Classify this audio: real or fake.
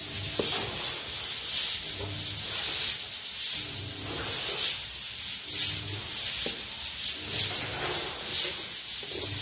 real